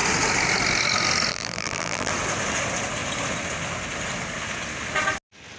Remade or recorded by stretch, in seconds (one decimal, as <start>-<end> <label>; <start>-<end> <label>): 0.0-1.3 recorded; 1.3-2.1 remade; 2.1-5.6 recorded